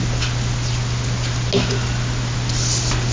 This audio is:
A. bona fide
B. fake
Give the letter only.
A